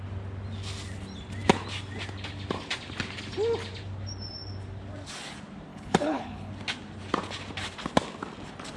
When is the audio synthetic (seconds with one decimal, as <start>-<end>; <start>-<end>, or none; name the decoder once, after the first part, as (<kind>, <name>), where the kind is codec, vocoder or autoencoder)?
5.7-6.5 (codec, HILCodec)